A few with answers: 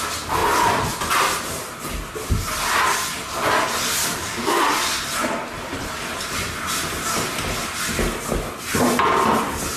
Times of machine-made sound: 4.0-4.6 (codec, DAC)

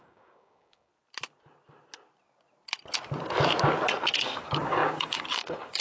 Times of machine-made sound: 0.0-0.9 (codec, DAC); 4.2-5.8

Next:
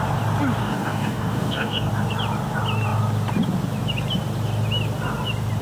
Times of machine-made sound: 0.6-1.9 (codec, DAC)

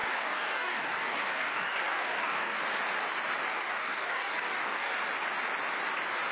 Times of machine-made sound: 0.0-2.6 (codec, DAC); 3.5-5.0

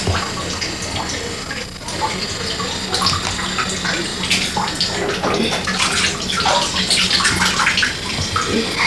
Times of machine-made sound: none